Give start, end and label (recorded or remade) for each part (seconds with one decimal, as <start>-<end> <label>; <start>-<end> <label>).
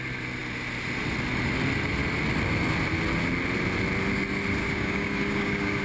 0.0-4.6 recorded; 4.6-5.8 remade